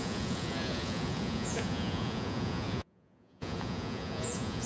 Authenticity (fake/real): fake